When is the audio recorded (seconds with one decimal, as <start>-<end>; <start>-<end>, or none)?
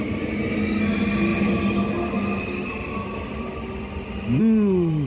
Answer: 0.0-5.1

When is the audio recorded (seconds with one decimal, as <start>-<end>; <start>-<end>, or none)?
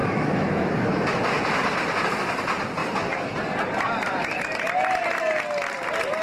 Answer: 1.2-6.2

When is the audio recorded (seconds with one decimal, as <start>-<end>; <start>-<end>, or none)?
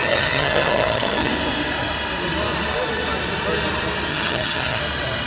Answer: 1.3-4.1; 4.8-5.3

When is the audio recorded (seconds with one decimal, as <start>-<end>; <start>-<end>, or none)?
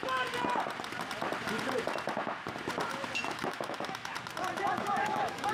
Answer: 0.0-3.3; 4.1-4.8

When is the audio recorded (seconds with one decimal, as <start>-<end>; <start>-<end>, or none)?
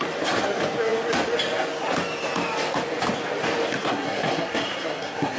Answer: 0.0-3.8